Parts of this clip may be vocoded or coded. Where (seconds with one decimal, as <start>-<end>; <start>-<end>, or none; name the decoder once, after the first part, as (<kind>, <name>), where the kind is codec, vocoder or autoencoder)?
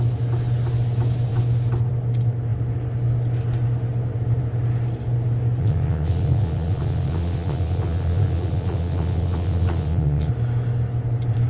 5.6-10.3 (vocoder, Vocos)